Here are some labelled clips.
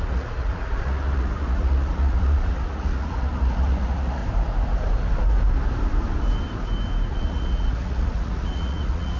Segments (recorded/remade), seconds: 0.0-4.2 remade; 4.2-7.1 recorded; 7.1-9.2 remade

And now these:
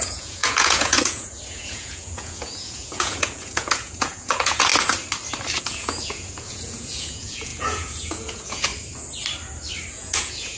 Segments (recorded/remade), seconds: 0.0-4.7 remade; 4.7-5.6 recorded; 5.6-8.7 remade; 8.7-9.9 recorded; 9.9-10.6 remade

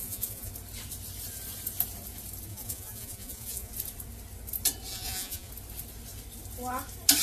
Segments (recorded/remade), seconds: 0.0-0.5 remade; 0.5-2.5 recorded; 2.5-3.7 remade; 3.7-4.9 recorded; 4.9-5.5 remade; 5.5-7.2 recorded

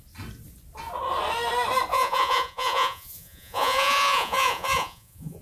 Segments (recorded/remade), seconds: 0.0-1.9 recorded; 1.9-5.4 remade

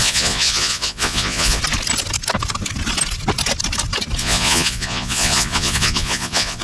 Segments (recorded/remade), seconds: 0.0-1.6 remade; 1.6-4.2 recorded; 4.2-6.6 remade